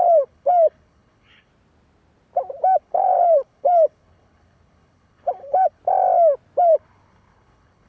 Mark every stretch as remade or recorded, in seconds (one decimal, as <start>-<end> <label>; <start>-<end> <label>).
0.0-1.5 remade; 1.5-2.8 recorded; 2.8-5.8 remade; 5.8-6.6 recorded; 6.6-7.9 remade